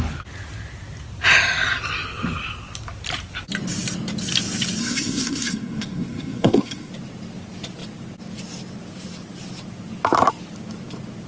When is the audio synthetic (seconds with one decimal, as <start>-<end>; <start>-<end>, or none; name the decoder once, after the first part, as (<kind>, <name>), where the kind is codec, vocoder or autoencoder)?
4.8-6.9 (codec, SNAC)